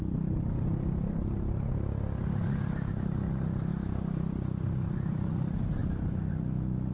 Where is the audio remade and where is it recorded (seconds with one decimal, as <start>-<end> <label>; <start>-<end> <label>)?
0.0-6.9 recorded